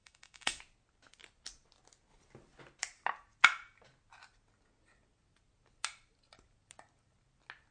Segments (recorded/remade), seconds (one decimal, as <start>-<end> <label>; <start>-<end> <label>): 0.0-0.6 remade; 0.6-7.7 recorded